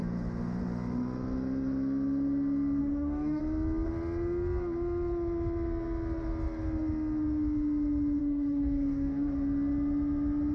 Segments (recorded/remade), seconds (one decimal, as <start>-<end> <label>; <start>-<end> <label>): 0.0-2.8 recorded; 2.8-3.4 remade; 3.4-8.2 recorded; 8.2-9.3 remade; 9.3-10.5 recorded